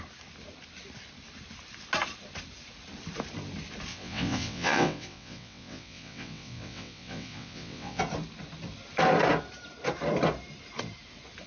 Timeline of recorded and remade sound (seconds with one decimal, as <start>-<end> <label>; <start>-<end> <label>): 0.0-3.9 recorded; 3.9-8.0 remade; 8.0-11.5 recorded